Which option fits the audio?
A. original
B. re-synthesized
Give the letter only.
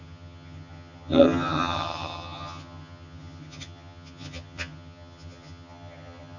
B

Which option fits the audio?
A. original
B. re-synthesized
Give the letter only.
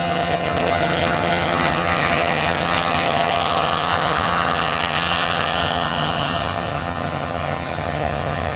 B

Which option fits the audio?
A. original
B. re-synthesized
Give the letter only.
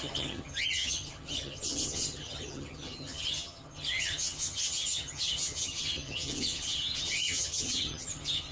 B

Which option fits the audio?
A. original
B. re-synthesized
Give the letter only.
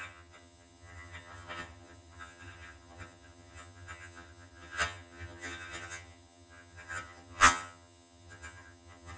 B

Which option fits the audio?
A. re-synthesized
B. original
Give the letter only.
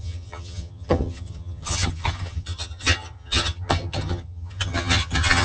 A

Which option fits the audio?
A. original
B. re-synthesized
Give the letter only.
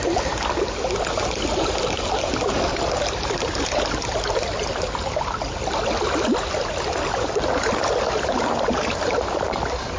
A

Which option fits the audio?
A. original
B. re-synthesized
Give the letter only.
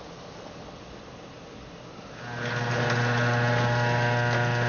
A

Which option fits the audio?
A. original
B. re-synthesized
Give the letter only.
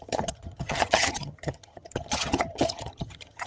B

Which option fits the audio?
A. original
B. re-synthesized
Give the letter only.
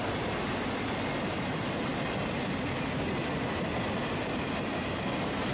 A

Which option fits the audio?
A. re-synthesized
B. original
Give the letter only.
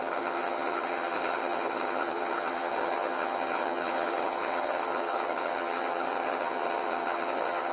A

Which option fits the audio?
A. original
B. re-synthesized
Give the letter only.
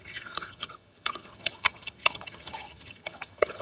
B